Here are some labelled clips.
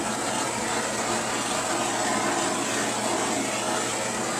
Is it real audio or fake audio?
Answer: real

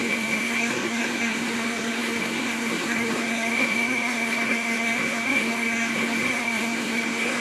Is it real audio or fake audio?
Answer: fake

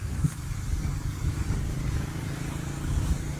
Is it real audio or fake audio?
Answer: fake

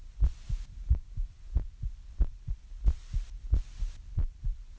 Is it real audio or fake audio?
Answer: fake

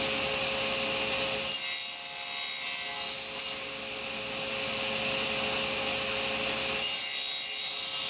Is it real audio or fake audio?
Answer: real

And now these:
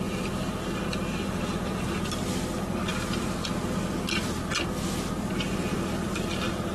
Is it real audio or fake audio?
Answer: real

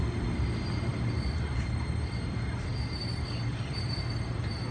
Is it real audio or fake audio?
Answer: real